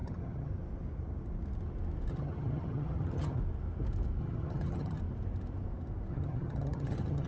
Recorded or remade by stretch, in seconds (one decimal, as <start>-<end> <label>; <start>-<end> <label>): 0.0-0.5 remade; 0.5-2.1 recorded; 2.1-3.4 remade; 3.4-4.2 recorded; 4.2-5.0 remade; 5.0-6.1 recorded; 6.1-7.3 remade